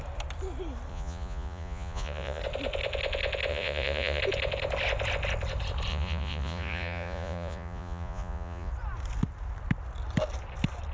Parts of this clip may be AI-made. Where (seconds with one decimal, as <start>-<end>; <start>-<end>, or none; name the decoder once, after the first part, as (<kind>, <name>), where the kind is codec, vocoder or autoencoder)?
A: 0.9-2.4 (vocoder, Vocos); 3.5-4.2; 5.9-8.7